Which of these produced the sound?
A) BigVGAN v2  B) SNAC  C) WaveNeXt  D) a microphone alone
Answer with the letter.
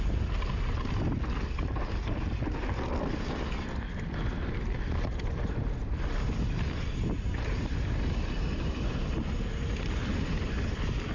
D